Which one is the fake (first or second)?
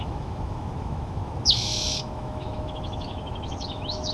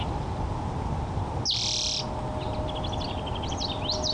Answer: first